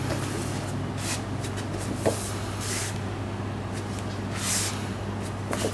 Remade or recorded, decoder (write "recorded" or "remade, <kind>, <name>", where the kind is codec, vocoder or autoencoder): recorded